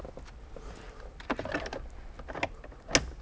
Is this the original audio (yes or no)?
yes